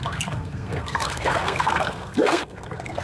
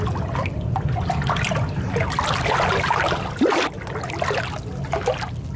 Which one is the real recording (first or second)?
second